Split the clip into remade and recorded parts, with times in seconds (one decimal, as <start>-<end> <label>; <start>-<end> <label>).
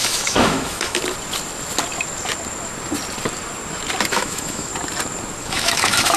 0.0-1.0 remade; 1.0-4.1 recorded; 4.1-4.7 remade; 4.7-5.4 recorded; 5.4-6.2 remade